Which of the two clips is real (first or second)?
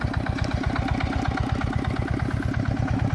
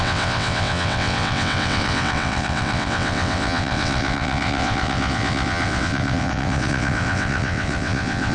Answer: first